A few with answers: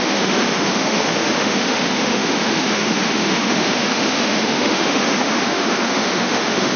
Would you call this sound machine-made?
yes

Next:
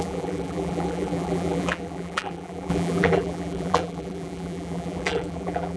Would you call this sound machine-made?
yes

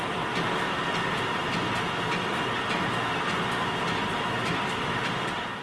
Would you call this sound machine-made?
no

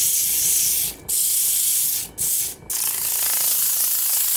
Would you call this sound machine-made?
no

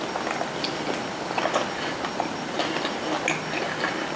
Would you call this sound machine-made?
no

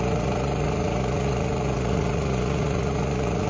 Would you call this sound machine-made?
yes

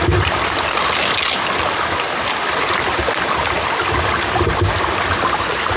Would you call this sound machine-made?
no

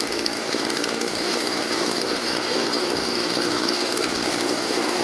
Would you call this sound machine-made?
yes